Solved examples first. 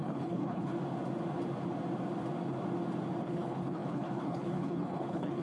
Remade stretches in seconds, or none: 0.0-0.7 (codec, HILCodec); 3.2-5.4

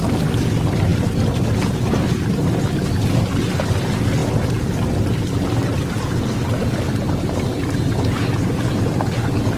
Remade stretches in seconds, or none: none

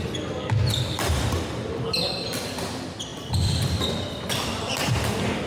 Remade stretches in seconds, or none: 3.1-4.8 (vocoder, BigVGAN v2)

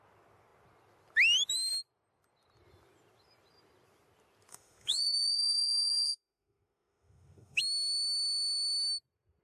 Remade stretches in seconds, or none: 4.5-7.6 (autoencoder, DAC-VAE)

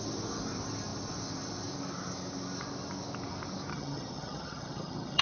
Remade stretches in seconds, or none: 3.7-5.2 (vocoder, HiFi-GAN)

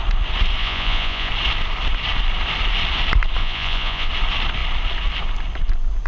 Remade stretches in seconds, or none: 0.6-1.3 (vocoder, Vocos); 3.4-4.1